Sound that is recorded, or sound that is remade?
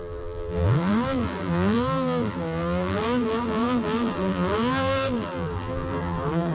remade